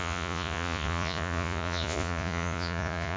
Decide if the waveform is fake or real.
fake